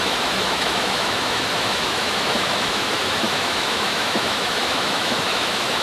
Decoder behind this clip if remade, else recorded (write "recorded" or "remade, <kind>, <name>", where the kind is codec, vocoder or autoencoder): remade, autoencoder, DAC-VAE